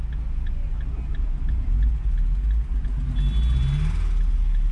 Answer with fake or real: real